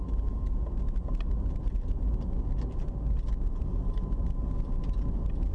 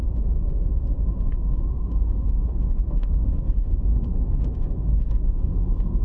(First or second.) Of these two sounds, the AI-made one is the second